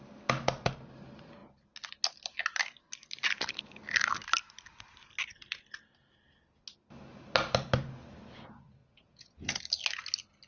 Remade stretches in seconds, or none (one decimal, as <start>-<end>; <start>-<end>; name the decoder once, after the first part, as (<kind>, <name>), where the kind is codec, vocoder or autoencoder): 8.8-9.6 (vocoder, Vocos)